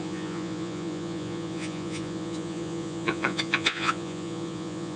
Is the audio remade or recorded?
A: remade